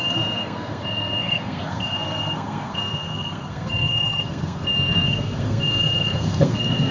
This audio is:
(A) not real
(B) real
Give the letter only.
A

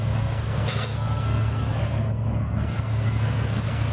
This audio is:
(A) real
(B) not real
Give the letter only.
B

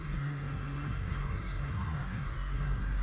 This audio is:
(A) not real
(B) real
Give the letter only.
A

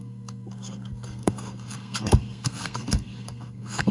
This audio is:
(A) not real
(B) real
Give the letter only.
A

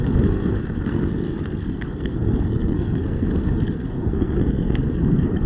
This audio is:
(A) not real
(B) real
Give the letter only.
A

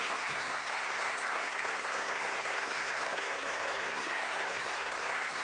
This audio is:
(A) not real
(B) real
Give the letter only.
A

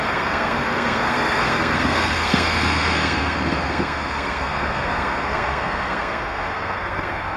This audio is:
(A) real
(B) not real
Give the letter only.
B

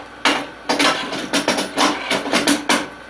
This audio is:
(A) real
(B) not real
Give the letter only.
A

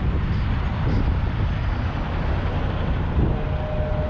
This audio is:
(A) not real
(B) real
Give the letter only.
B